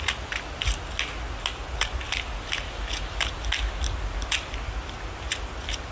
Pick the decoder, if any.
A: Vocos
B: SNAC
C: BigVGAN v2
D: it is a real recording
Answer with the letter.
D